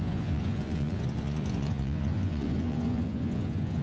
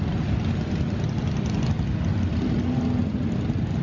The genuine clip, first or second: second